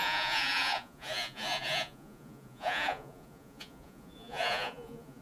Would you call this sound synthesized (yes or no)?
yes